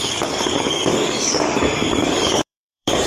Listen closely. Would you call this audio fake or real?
fake